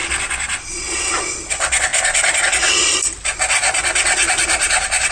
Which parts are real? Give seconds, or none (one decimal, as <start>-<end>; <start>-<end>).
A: 0.0-5.1